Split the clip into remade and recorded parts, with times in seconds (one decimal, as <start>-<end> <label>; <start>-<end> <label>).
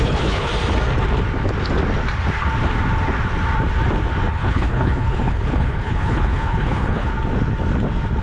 0.0-0.5 remade; 0.5-4.3 recorded; 4.3-7.1 remade; 7.1-8.2 recorded